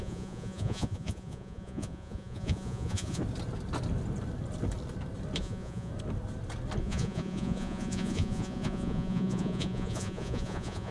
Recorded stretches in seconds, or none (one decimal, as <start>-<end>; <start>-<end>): 3.2-5.4; 5.9-6.8